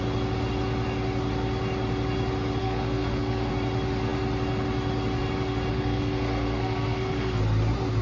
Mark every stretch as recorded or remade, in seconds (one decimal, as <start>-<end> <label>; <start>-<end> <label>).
0.0-2.6 recorded; 2.6-3.5 remade; 3.5-5.7 recorded; 5.7-7.4 remade; 7.4-8.0 recorded